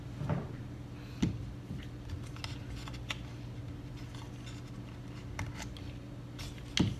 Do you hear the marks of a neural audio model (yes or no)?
no